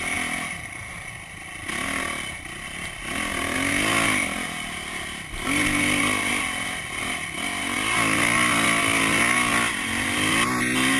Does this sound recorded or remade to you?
recorded